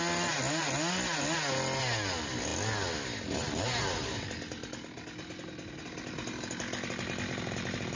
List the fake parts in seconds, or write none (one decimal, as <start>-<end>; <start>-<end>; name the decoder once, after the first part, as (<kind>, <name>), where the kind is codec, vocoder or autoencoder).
none